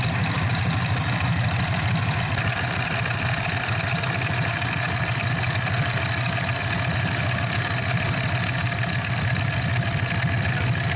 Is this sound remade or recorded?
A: recorded